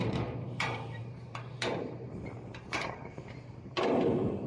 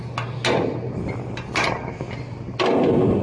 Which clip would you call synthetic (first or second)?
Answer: first